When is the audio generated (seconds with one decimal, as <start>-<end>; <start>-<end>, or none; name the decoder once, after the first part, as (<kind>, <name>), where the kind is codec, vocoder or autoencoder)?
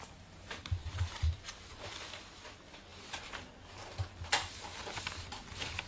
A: none